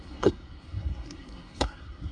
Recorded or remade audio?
remade